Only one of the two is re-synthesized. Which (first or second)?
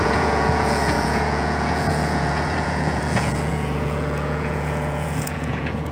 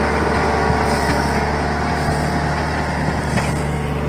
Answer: first